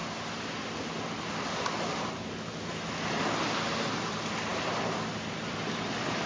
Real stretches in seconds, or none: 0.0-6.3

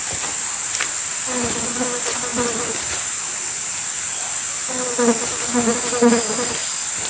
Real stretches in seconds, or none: 0.0-7.1

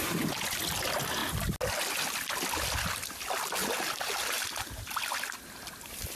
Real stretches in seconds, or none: 0.0-6.2

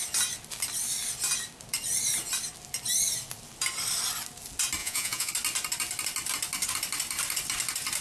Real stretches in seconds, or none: 0.0-4.8; 5.3-8.0

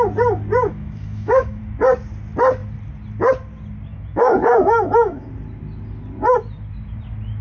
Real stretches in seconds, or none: 0.0-0.7; 1.6-3.9; 5.3-7.4

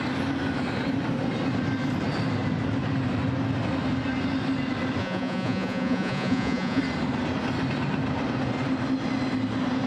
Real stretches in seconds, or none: 0.0-5.0; 6.8-9.9

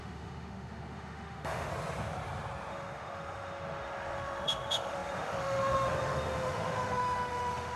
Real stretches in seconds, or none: 1.7-2.7

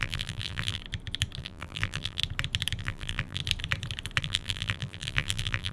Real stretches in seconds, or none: 0.8-1.4; 2.2-2.8; 3.4-4.2